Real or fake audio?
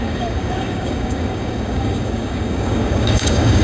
fake